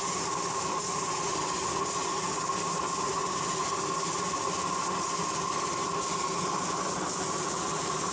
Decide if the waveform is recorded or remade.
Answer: recorded